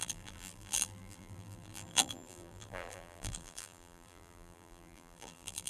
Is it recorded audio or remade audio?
remade